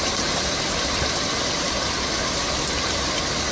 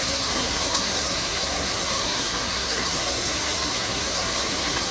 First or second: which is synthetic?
second